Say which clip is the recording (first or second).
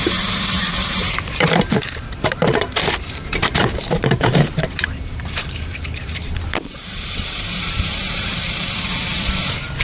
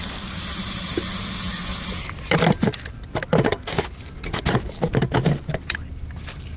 second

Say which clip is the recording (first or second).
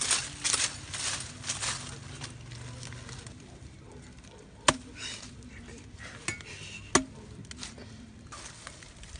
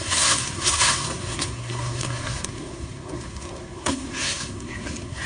first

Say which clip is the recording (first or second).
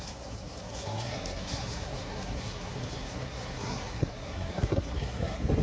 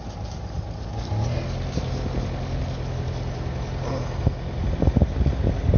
second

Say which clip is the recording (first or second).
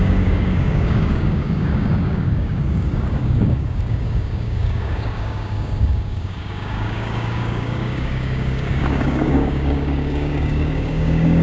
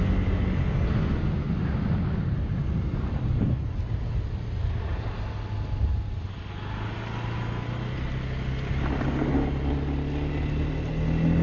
second